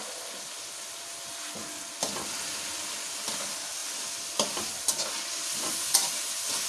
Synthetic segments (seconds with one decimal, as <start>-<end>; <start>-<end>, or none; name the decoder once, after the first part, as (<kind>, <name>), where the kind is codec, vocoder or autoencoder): 3.8-6.1 (vocoder, BigVGAN v2)